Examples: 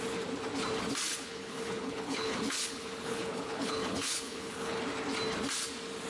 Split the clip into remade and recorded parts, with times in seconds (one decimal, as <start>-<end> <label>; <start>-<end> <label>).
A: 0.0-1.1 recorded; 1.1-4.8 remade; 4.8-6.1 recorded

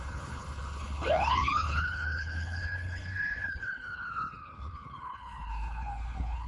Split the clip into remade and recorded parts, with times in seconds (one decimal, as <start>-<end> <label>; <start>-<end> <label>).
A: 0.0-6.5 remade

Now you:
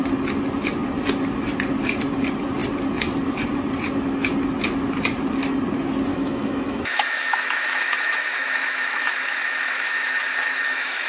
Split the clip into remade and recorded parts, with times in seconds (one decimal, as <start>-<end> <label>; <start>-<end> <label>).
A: 0.0-6.1 recorded; 6.1-11.1 remade

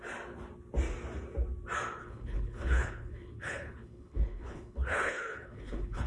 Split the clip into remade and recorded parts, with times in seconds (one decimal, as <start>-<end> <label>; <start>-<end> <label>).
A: 0.0-2.0 recorded; 2.0-6.1 remade

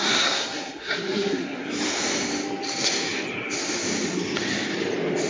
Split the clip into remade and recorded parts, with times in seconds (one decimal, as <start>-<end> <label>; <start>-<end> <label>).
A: 0.0-1.7 remade; 1.7-5.3 recorded